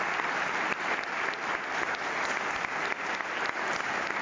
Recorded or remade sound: recorded